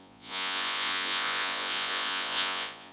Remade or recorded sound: remade